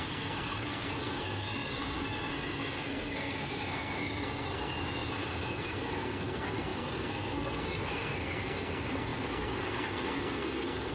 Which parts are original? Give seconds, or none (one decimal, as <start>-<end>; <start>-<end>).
none